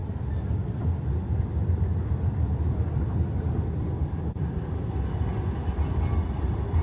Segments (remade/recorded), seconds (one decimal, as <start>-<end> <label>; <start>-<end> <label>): 0.0-6.8 recorded